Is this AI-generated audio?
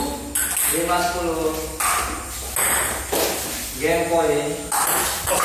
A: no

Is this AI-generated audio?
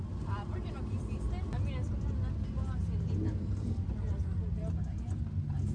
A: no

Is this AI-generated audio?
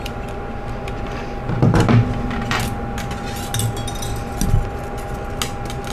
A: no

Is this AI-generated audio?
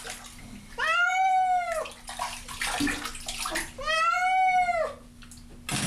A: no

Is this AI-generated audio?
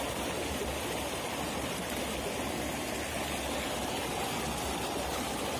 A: no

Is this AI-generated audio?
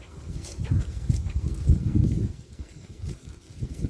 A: yes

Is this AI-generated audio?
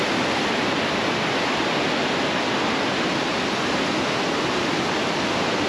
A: no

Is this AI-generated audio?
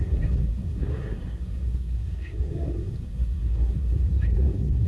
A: yes